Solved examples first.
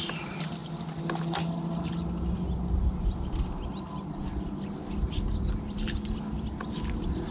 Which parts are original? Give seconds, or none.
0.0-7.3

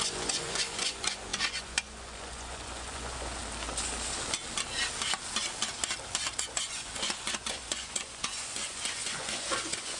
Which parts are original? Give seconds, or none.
3.4-6.4